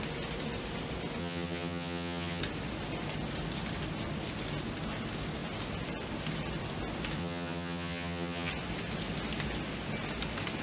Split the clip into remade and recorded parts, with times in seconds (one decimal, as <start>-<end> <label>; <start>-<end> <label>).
0.0-1.2 recorded; 1.2-2.4 remade; 2.4-7.2 recorded; 7.2-8.5 remade; 8.5-10.6 recorded